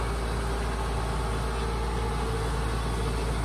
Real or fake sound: real